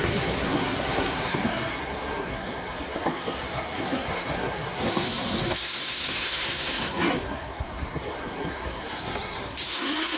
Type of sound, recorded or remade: remade